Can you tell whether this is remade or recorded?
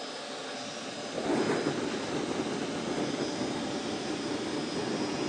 recorded